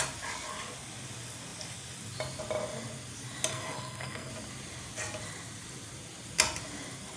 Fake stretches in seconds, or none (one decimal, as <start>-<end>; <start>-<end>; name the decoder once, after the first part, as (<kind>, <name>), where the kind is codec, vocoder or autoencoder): 3.5-4.3 (codec, SNAC)